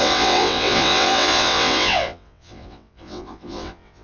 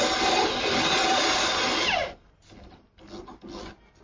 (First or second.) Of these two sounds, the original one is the second